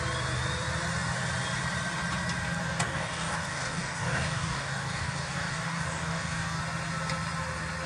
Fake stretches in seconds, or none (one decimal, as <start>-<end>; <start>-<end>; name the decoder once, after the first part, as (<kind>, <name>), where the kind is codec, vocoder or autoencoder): 2.6-6.6 (codec, DAC)